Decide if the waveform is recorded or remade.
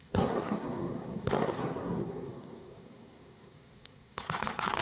remade